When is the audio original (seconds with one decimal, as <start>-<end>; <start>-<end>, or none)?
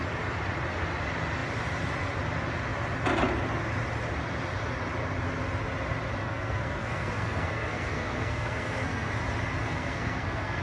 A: 0.0-6.2; 9.1-9.6